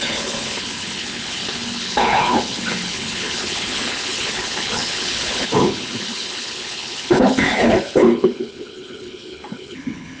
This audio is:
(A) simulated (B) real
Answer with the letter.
A